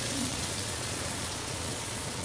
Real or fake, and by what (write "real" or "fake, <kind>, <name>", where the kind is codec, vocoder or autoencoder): fake, vocoder, Vocos